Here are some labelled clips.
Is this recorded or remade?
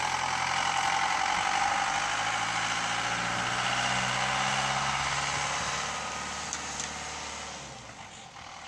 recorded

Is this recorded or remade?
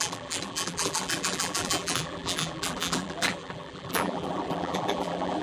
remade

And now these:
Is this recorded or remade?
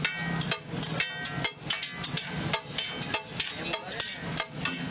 recorded